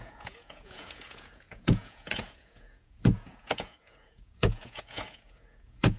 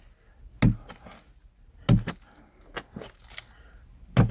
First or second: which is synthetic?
first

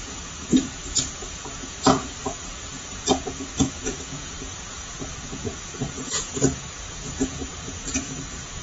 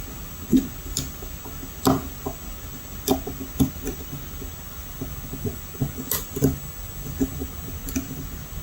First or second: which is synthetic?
first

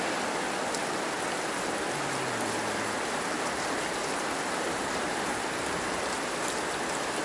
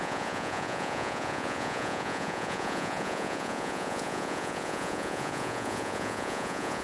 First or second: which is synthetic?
second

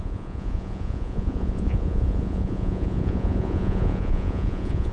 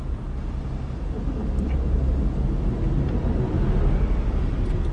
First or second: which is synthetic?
first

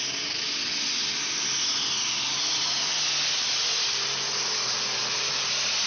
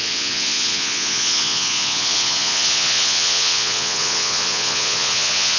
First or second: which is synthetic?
second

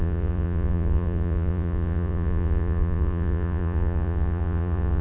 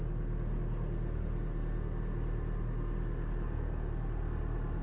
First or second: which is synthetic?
first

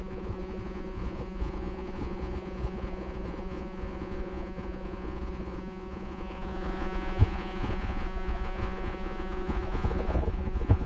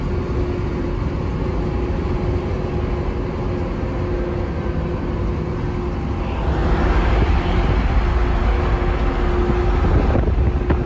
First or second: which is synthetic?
first